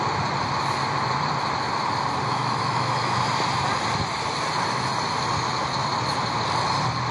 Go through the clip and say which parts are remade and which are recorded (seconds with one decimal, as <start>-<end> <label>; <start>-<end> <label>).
0.0-2.3 recorded; 2.3-3.2 remade; 3.2-7.1 recorded

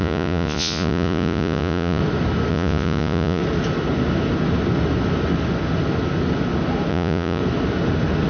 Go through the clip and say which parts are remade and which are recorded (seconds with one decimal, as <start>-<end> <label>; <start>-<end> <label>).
0.0-2.0 remade; 2.0-2.5 recorded; 2.5-3.4 remade; 3.4-6.9 recorded; 6.9-7.4 remade; 7.4-8.3 recorded

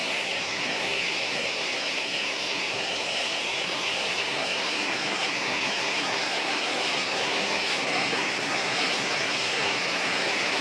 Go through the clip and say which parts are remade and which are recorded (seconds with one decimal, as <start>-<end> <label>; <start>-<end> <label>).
0.0-10.6 remade

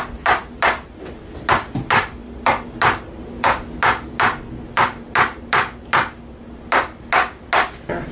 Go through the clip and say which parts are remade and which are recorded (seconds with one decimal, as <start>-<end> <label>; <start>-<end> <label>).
0.0-8.1 recorded

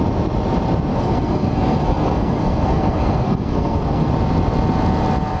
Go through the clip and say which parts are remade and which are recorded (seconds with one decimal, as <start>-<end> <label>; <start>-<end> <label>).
0.0-0.9 recorded; 0.9-4.1 remade; 4.1-5.4 recorded

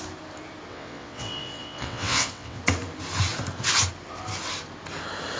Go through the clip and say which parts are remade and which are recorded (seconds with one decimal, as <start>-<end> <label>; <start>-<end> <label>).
0.0-0.7 recorded; 0.7-2.6 remade; 2.6-5.4 recorded

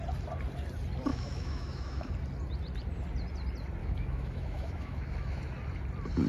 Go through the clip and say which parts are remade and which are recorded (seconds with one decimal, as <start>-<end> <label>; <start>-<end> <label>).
0.0-1.1 recorded; 1.1-2.1 remade; 2.1-3.8 recorded; 3.8-5.4 remade; 5.4-6.3 recorded